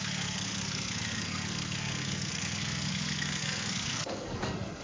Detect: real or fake fake